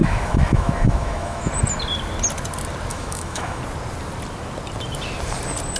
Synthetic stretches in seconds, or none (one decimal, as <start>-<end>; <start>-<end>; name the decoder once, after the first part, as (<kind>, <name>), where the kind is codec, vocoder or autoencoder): 0.0-1.5 (autoencoder, DAC-VAE); 2.9-3.6